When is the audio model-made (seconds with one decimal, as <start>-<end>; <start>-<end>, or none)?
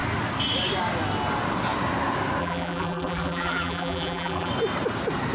2.4-4.5